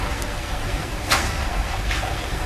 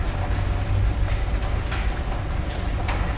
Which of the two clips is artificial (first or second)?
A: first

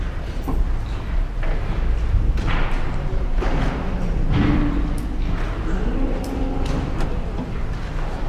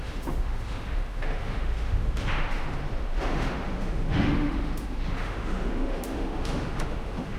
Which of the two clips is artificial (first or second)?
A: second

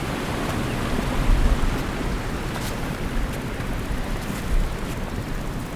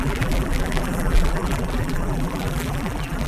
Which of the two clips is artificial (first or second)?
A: second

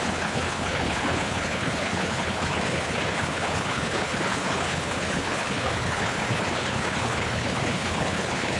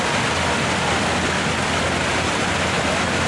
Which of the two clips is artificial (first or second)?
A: first